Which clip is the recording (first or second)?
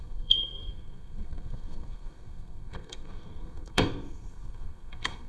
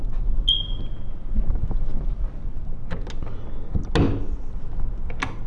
second